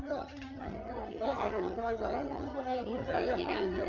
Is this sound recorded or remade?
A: remade